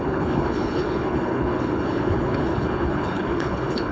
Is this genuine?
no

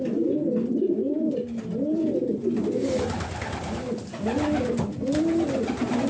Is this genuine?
yes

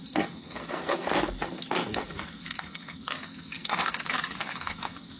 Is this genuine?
no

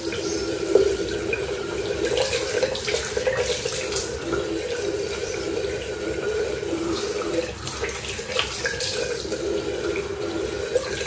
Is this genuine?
yes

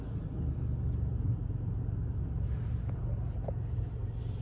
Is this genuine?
yes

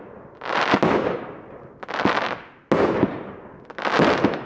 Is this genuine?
yes